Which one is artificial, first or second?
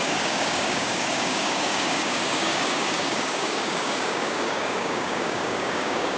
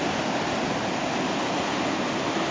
first